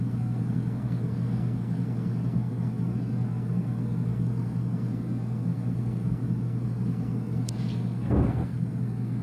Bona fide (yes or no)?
no